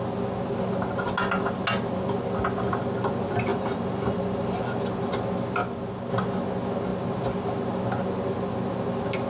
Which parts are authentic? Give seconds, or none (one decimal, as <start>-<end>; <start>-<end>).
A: 0.0-3.5; 4.6-9.3